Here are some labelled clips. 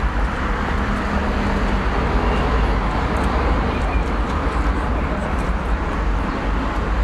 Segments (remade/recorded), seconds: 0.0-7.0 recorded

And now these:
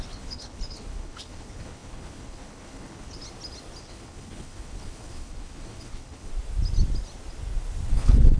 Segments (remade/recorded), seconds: 0.0-3.2 remade; 3.2-3.8 recorded; 3.8-6.3 remade; 6.3-7.9 recorded; 7.9-8.4 remade

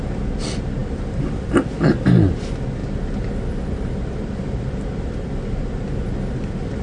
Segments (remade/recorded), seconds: 0.0-6.8 recorded

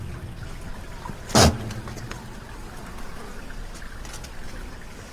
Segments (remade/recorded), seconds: 0.0-5.1 recorded